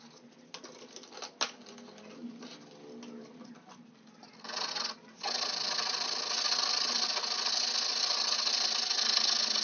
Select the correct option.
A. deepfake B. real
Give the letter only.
B